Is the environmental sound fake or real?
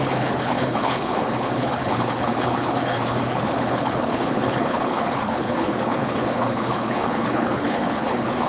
fake